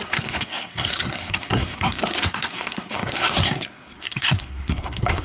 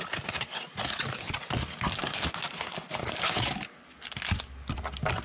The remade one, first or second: first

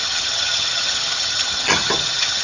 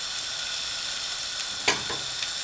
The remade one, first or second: first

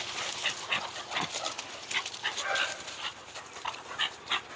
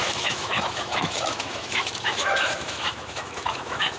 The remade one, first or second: second